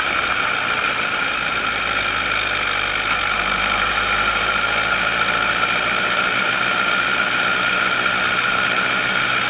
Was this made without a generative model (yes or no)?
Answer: yes